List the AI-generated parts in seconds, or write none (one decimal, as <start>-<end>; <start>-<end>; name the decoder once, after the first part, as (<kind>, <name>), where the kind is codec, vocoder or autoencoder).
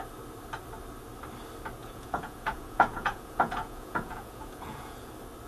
1.8-5.1 (vocoder, Vocos)